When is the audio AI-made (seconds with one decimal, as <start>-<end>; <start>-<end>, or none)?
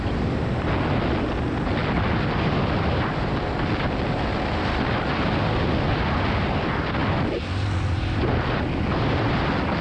none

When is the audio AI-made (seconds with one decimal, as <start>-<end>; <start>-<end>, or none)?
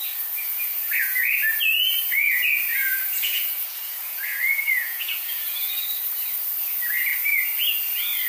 0.4-1.3; 2.7-5.8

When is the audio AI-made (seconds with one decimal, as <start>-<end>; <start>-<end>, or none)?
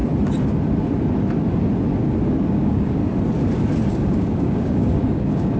2.5-3.0; 3.9-5.6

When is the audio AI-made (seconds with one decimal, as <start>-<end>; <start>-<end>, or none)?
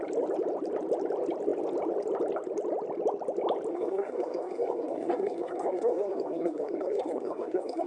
3.7-7.9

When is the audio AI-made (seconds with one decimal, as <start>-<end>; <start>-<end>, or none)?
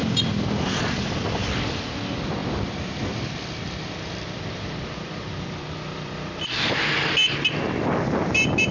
2.4-7.1